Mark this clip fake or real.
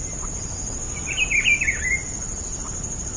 real